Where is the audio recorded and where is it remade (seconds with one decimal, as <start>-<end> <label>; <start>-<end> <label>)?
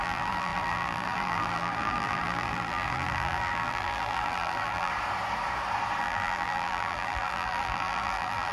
0.0-4.9 remade; 4.9-6.0 recorded; 6.0-8.5 remade